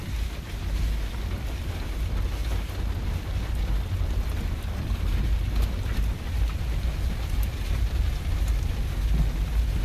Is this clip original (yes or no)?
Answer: yes